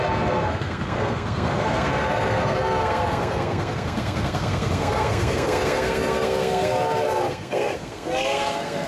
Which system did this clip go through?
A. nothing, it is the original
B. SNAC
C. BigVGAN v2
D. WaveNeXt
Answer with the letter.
B